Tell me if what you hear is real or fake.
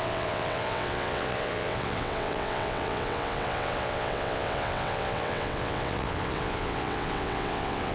fake